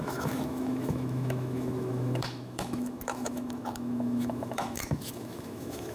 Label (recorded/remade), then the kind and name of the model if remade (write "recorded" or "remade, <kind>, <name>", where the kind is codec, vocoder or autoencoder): remade, autoencoder, DAC-VAE